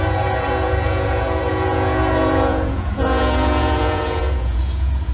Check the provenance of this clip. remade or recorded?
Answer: remade